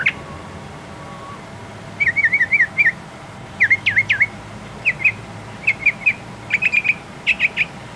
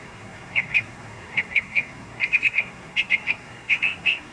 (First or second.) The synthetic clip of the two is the second